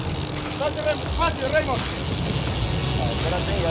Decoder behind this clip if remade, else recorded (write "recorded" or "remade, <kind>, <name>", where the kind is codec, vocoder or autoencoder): recorded